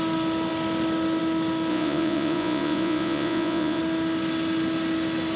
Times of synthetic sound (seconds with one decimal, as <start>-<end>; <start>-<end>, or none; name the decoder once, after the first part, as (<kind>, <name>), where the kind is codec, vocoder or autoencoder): 1.7-3.8 (vocoder, Vocos)